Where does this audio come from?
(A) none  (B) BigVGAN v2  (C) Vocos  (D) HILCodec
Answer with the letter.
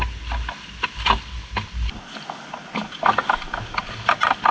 A